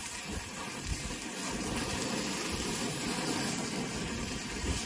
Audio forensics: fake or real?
real